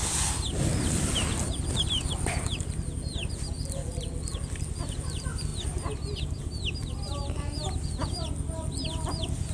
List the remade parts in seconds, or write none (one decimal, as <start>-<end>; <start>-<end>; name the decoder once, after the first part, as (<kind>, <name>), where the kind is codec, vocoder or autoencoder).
0.0-3.3 (vocoder, BigVGAN v2); 5.5-6.4